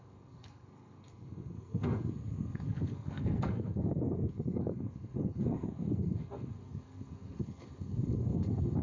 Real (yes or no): no